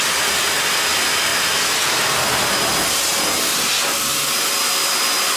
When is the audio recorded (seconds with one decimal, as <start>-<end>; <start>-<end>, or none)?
0.0-5.4